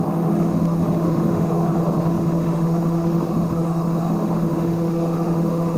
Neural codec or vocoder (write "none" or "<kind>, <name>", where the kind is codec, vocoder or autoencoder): autoencoder, DAC-VAE